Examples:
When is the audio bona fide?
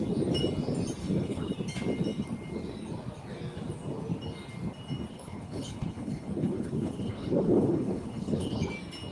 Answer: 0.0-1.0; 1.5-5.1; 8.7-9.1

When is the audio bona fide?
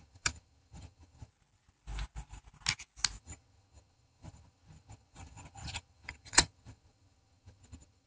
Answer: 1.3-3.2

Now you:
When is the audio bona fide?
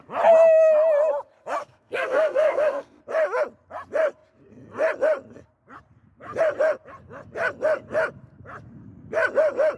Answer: 0.0-1.6; 3.0-9.8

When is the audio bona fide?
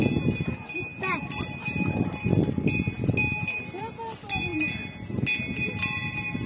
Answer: 0.0-6.5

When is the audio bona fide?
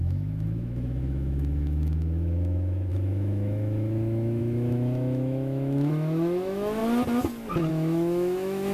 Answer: 6.8-7.7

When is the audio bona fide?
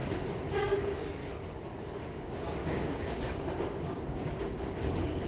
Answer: 0.0-0.6; 1.2-2.1